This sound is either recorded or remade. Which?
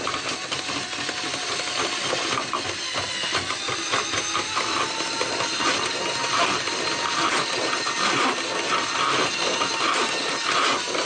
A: recorded